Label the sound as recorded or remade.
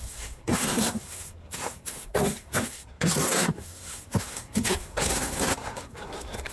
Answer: remade